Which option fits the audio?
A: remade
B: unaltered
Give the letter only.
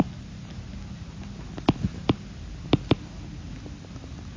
B